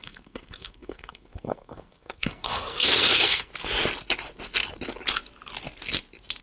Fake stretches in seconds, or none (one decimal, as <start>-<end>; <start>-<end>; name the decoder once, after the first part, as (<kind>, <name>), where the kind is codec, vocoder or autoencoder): 0.0-3.5 (codec, SNAC)